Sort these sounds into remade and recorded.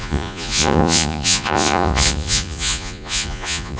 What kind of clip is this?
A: remade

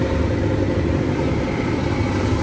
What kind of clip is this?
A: remade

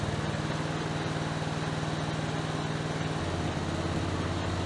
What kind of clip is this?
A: recorded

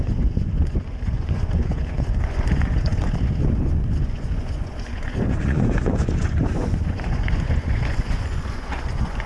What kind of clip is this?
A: remade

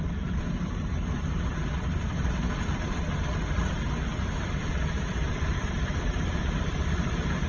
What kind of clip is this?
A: remade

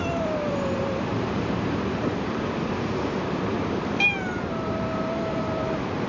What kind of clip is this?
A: remade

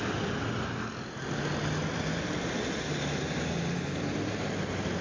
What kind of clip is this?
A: recorded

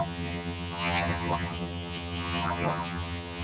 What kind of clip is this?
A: remade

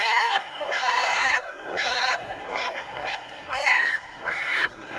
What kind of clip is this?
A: remade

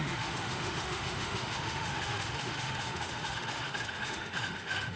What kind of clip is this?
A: remade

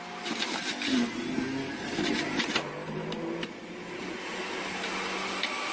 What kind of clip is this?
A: recorded